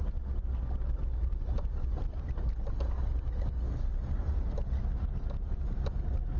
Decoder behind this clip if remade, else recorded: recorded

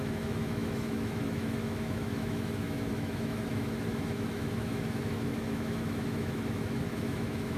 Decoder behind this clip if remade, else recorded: remade, autoencoder, DAC-VAE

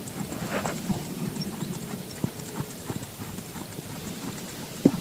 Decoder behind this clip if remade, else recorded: remade, vocoder, BigVGAN v2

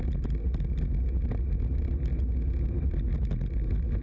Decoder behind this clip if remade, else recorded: recorded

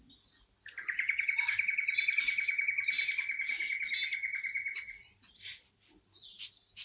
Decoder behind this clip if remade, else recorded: recorded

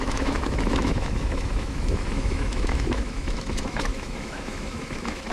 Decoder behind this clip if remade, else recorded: remade, autoencoder, DAC-VAE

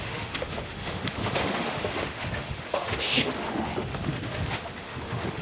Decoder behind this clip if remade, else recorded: remade, autoencoder, DAC-VAE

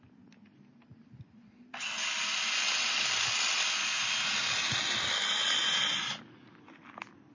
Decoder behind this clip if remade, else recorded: recorded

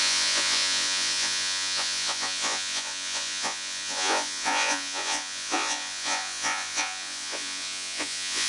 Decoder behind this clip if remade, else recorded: remade, vocoder, Vocos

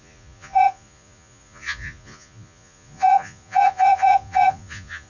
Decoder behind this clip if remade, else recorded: remade, vocoder, Vocos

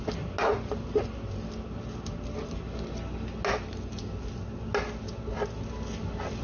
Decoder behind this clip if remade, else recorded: recorded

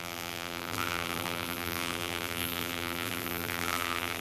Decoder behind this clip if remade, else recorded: remade, vocoder, BigVGAN v2